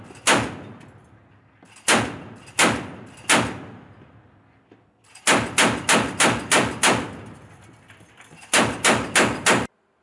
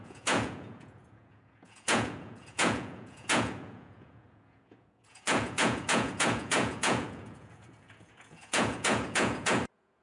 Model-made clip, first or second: second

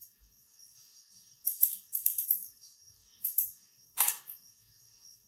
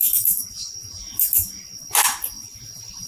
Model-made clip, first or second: first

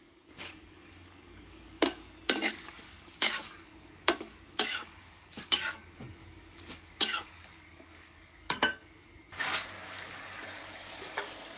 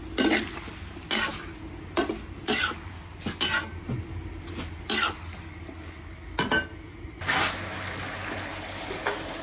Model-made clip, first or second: first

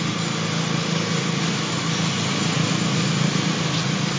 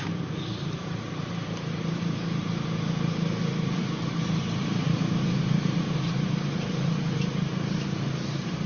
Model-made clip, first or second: second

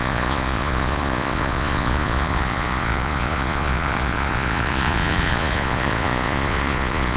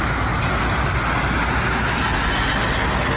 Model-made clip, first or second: first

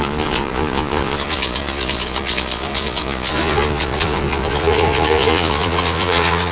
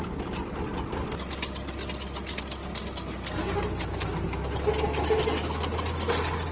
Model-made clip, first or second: first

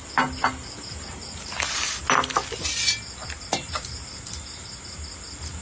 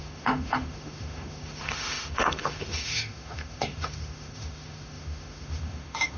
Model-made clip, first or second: second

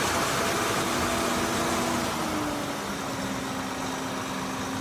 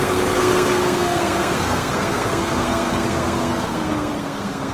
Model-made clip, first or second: second